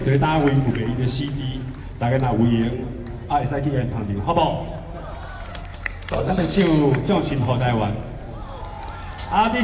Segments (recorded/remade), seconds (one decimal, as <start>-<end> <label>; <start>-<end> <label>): 0.0-5.5 recorded; 5.5-6.6 remade; 6.6-9.6 recorded